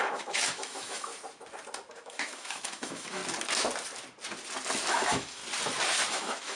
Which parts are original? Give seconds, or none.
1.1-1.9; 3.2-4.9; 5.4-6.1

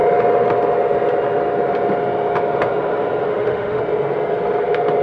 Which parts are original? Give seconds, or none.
0.0-3.3; 3.8-5.0

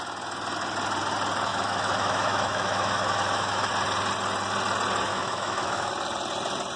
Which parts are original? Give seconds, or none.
0.0-1.5; 3.7-5.1; 5.9-6.8